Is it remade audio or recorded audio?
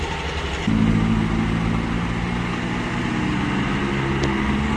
recorded